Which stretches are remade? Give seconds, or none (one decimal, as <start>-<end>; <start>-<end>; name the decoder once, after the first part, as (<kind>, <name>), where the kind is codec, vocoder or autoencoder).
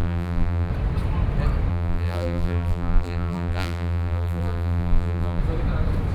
0.0-0.7 (vocoder, BigVGAN v2); 1.7-5.4